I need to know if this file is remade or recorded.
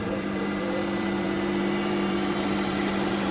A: remade